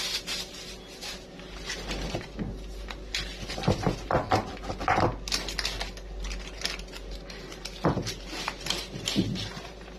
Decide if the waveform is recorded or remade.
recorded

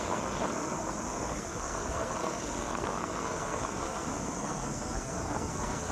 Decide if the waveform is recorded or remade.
remade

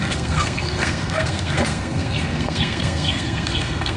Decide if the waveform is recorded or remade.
remade